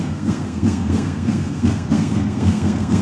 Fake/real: fake